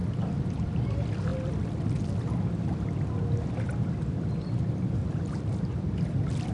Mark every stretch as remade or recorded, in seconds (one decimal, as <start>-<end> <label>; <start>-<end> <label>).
0.0-0.9 remade; 0.9-5.0 recorded; 5.0-6.5 remade